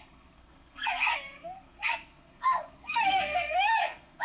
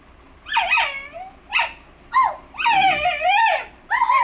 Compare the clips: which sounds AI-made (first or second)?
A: first